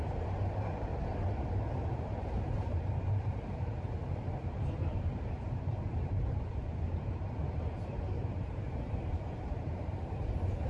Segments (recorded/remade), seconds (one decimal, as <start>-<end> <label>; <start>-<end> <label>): 0.0-0.9 remade; 0.9-1.7 recorded; 1.7-10.7 remade